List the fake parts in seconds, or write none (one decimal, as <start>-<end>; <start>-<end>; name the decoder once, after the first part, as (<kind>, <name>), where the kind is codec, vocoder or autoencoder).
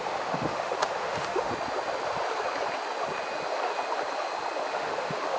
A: 0.0-1.5 (autoencoder, DAC-VAE); 4.7-5.4